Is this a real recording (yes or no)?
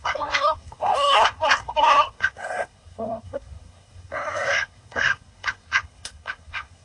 no